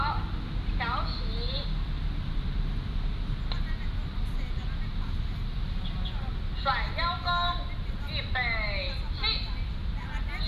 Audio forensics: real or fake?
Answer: real